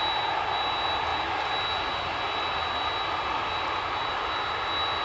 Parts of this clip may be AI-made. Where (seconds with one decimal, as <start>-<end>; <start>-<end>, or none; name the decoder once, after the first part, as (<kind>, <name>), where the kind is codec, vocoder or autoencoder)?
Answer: none